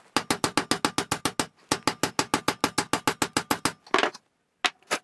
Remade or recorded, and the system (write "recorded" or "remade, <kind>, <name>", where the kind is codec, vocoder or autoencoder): recorded